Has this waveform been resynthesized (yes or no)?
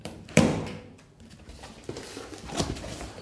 yes